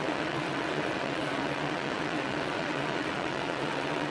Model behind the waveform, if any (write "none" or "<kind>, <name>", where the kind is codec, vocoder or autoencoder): vocoder, WaveNeXt